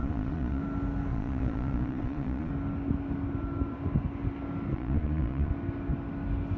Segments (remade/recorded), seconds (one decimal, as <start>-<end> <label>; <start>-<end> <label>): 0.0-0.6 remade; 0.6-1.1 recorded; 1.1-2.5 remade; 2.5-4.7 recorded; 4.7-5.5 remade; 5.5-6.6 recorded